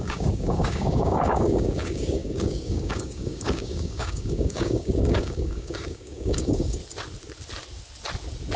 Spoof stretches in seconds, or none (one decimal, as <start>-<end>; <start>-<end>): 0.0-6.8